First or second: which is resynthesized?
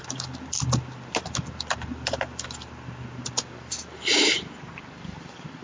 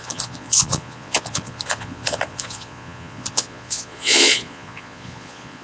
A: second